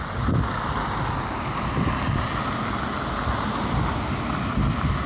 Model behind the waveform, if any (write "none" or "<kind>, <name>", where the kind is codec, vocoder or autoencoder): none